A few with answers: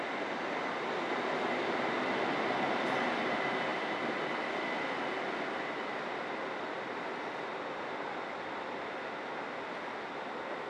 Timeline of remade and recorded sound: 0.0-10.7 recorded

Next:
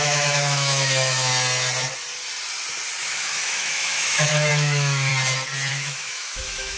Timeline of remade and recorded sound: 0.0-1.3 remade; 1.3-3.0 recorded; 3.0-5.1 remade; 5.1-5.7 recorded; 5.7-6.8 remade

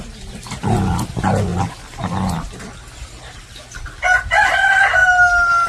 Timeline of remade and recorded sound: 0.0-5.7 recorded

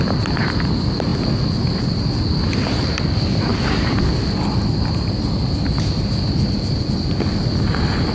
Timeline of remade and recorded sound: 0.0-3.5 recorded; 3.5-4.0 remade; 4.0-8.1 recorded

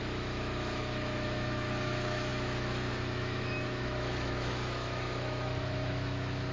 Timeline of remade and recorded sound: 0.0-6.5 remade